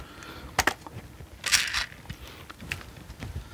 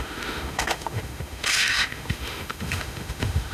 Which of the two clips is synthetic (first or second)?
second